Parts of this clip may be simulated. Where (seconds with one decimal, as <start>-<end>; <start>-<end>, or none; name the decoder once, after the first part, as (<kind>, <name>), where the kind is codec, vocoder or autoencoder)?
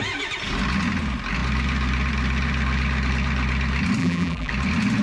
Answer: 4.0-4.5 (vocoder, BigVGAN v2)